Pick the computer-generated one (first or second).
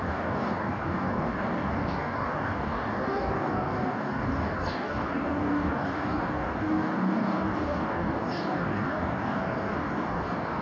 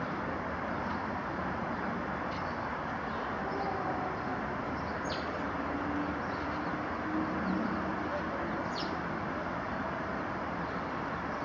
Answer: first